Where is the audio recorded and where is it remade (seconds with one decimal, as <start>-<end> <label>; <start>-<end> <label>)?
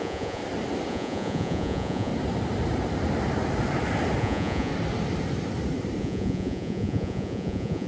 0.0-0.4 remade; 0.4-0.9 recorded; 0.9-2.1 remade; 2.1-4.2 recorded; 4.2-4.7 remade; 4.7-6.0 recorded; 6.0-7.9 remade